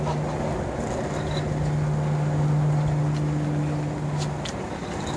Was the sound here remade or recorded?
recorded